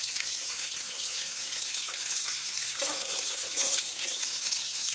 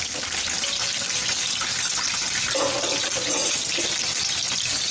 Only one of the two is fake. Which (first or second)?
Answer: first